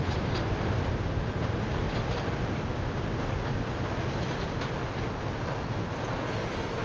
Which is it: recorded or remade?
recorded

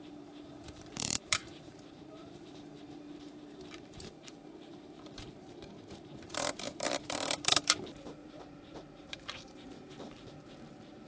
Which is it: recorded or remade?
remade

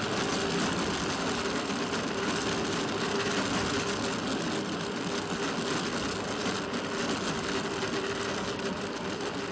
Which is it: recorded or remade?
recorded